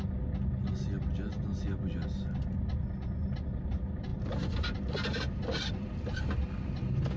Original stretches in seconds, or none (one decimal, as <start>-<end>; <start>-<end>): 0.0-3.3